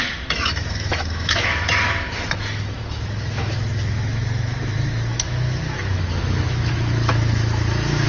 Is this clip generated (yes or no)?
yes